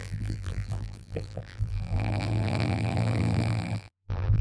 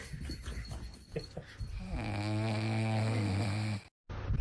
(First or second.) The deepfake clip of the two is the first